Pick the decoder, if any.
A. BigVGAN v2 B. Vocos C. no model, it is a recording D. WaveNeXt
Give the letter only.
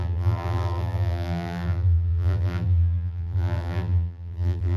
A